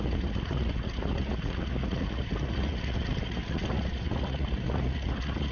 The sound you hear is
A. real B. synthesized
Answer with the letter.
B